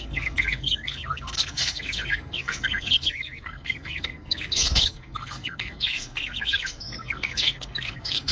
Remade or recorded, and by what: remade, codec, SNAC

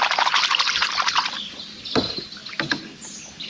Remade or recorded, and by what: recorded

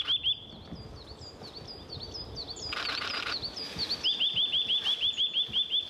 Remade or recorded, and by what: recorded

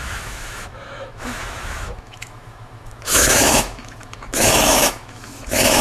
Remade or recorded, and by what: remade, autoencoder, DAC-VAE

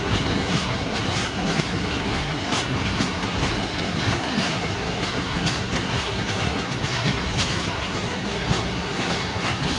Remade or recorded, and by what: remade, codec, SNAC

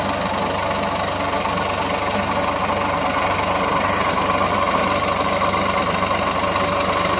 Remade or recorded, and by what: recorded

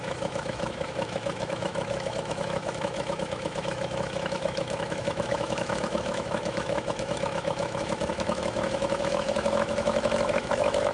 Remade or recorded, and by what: remade, autoencoder, DAC-VAE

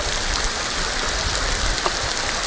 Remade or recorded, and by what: recorded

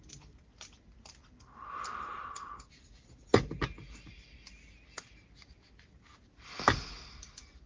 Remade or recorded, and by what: recorded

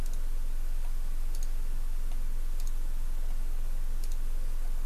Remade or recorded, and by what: recorded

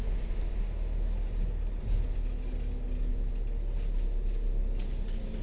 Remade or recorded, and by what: recorded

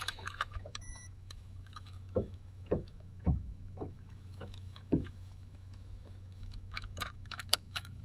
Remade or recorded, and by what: remade, autoencoder, DAC-VAE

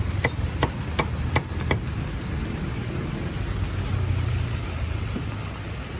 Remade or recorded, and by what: recorded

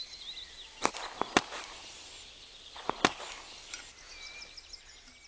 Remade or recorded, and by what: recorded